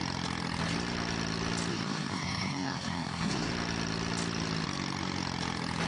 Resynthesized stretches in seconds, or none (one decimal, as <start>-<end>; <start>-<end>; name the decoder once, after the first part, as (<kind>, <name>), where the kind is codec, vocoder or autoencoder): 1.7-3.5 (codec, SNAC)